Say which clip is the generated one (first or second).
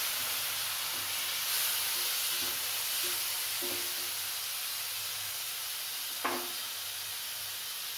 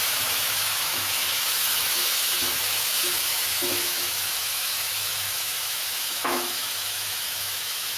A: second